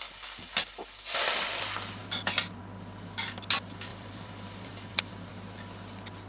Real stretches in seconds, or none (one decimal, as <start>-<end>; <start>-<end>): 0.0-3.9; 5.3-6.3